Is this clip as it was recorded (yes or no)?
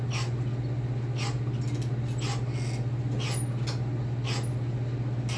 yes